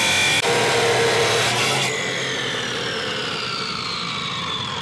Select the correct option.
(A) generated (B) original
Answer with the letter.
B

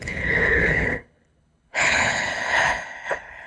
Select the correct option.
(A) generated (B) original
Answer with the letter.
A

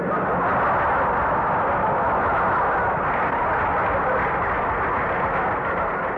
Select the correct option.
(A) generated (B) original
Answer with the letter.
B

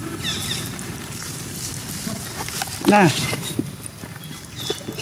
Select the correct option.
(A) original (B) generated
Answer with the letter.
A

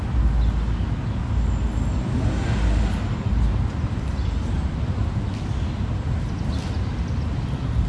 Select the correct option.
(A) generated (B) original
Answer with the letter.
B